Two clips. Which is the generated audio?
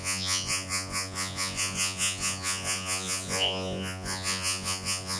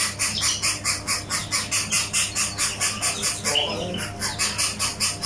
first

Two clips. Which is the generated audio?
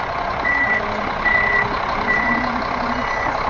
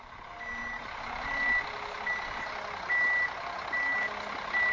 first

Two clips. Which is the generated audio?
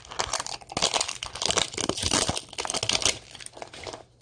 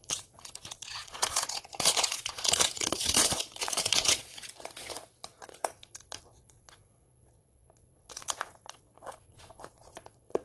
second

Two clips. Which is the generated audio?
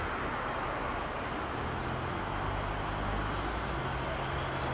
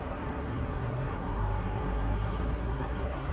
second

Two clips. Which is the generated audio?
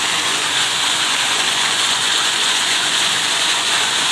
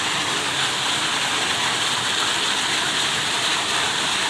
first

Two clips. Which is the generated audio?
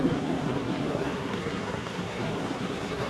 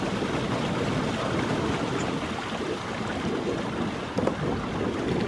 first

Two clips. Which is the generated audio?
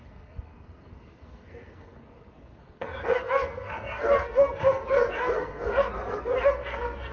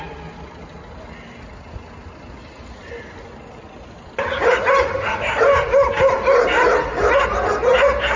first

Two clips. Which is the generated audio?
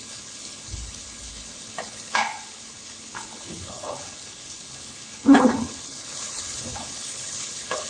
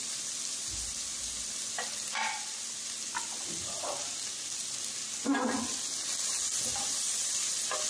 first